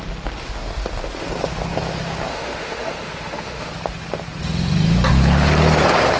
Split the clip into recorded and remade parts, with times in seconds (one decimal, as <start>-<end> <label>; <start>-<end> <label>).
0.0-2.3 recorded; 2.3-3.7 remade; 3.7-6.2 recorded